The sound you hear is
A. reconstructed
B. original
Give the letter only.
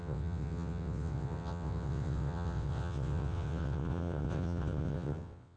A